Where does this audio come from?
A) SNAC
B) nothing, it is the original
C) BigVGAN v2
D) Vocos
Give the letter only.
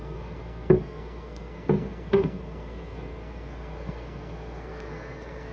A